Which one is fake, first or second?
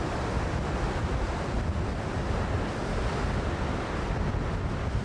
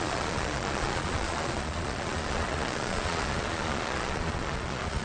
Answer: second